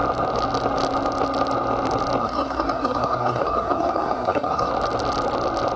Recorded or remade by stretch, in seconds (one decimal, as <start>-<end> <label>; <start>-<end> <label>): 0.0-2.2 recorded; 2.2-4.7 remade; 4.7-5.8 recorded